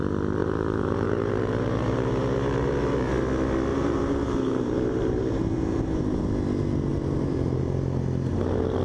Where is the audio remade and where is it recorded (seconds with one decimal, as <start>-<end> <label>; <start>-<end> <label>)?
0.0-0.4 recorded; 0.4-3.1 remade; 3.1-3.7 recorded; 3.7-6.2 remade; 6.2-6.9 recorded; 6.9-7.6 remade; 7.6-8.8 recorded